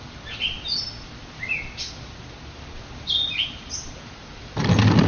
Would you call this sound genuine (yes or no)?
yes